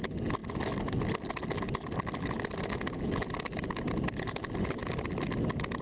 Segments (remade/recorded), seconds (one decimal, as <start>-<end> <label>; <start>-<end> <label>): 0.0-5.8 recorded